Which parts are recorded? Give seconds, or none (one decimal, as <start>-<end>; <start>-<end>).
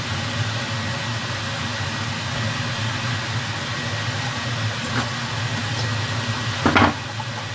0.0-7.5